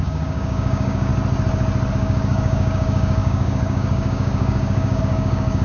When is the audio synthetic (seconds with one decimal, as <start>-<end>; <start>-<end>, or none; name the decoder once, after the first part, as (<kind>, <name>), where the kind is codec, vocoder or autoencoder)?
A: 0.0-1.1 (codec, DAC); 1.9-5.6